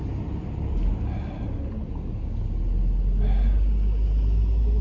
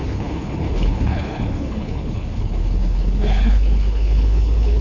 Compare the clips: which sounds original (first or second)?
first